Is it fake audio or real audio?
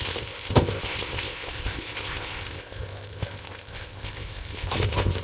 fake